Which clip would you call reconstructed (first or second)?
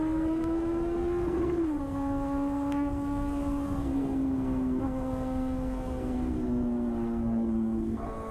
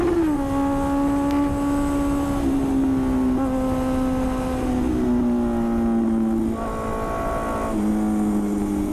first